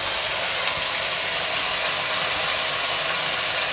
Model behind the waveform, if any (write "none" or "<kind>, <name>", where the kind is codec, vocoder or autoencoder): none